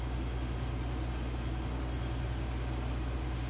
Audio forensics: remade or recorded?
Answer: recorded